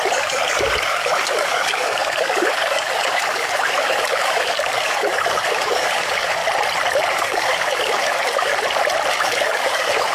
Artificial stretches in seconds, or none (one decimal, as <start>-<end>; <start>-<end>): 0.0-6.4; 7.1-8.5; 9.1-10.1